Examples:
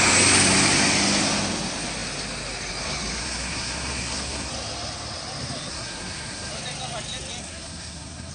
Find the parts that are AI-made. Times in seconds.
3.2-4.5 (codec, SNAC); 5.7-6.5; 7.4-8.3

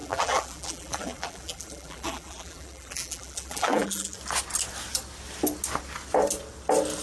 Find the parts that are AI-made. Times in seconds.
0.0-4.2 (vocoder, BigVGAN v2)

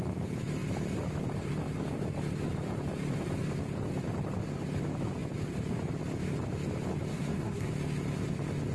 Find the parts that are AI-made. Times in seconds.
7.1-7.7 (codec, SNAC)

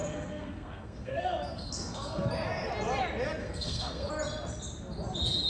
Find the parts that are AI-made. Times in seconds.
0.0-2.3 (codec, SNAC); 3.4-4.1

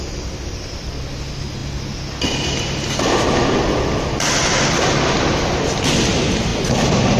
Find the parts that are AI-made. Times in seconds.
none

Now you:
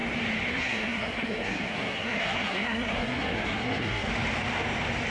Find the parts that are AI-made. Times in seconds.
0.5-4.1 (codec, SNAC)

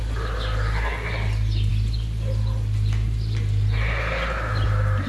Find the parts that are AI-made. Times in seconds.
none